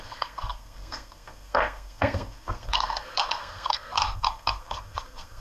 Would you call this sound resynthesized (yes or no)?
yes